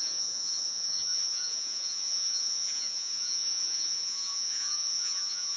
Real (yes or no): no